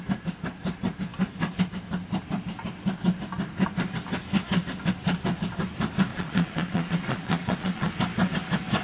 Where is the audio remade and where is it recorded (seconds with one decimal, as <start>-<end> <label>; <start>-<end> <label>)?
0.0-6.1 recorded; 6.1-7.9 remade; 7.9-8.8 recorded